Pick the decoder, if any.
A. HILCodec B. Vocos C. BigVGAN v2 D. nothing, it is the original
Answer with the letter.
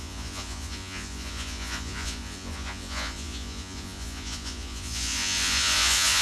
B